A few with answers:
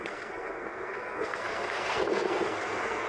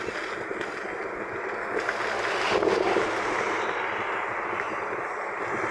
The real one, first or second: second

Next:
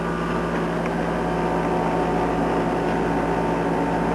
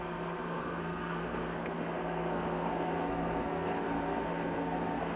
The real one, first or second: first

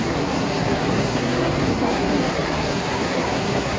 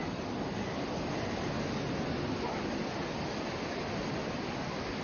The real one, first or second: second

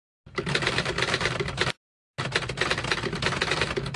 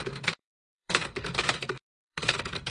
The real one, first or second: first